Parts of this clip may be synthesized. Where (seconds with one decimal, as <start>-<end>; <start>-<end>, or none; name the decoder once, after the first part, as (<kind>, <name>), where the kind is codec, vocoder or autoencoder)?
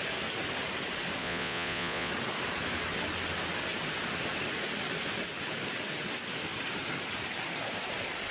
1.2-2.1 (vocoder, Vocos)